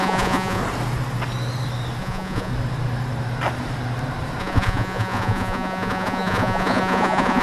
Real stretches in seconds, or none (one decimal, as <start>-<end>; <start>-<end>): 0.6-2.0; 2.5-4.4